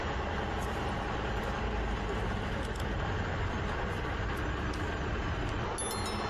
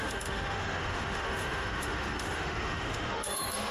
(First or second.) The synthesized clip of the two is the second